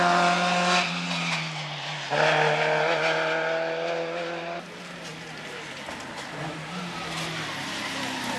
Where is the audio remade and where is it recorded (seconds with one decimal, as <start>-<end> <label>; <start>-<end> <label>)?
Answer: 0.0-8.4 recorded